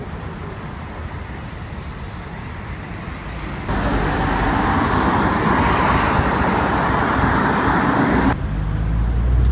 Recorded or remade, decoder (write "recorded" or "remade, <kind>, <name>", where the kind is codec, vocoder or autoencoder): recorded